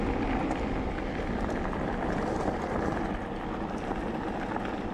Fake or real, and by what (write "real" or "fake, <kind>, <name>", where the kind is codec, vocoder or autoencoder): real